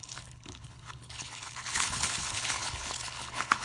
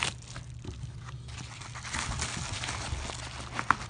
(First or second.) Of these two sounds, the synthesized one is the first